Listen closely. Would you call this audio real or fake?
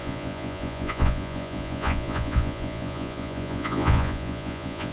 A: fake